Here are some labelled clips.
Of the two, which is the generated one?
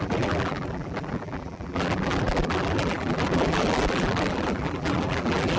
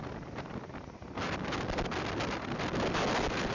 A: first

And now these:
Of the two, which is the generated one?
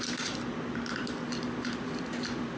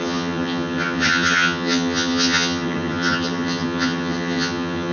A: second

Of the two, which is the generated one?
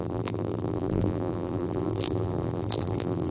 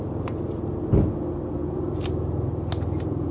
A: first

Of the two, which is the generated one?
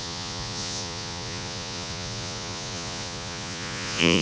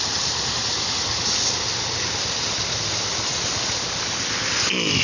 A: first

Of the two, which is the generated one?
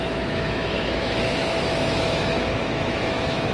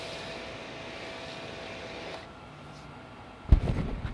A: first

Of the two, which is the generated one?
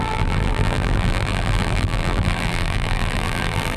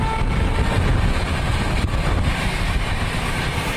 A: first